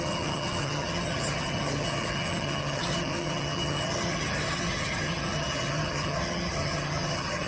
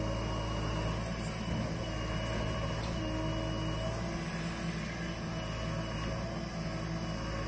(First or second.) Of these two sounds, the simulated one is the first